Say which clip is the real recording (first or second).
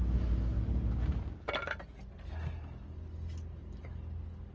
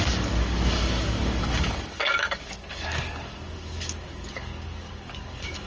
first